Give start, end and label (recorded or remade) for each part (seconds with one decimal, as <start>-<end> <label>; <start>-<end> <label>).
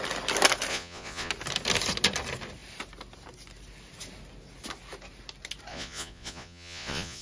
0.0-0.7 recorded; 0.7-1.3 remade; 1.3-5.7 recorded; 5.7-7.2 remade